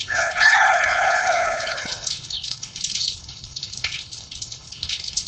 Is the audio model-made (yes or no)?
yes